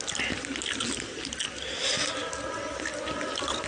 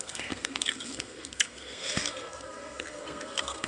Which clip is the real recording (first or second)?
first